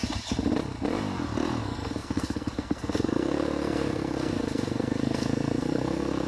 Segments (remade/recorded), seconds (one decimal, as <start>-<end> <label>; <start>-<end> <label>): 0.0-1.6 recorded; 1.6-6.3 remade